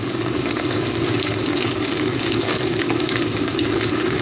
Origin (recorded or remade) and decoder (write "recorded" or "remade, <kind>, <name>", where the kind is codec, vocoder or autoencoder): remade, codec, DAC